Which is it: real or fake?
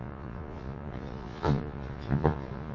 fake